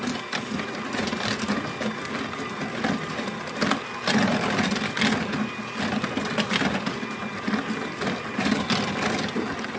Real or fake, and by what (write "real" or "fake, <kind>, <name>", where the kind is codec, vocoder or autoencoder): real